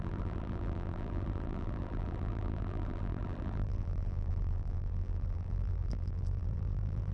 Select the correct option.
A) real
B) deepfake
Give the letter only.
B